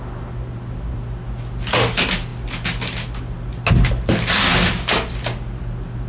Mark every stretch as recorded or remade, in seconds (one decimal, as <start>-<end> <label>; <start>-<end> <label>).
0.0-6.1 recorded